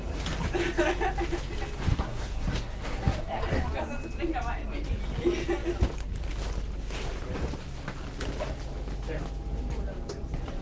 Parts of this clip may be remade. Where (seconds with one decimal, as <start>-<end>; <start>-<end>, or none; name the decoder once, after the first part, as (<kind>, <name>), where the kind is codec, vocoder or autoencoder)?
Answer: 1.9-3.4 (codec, SNAC)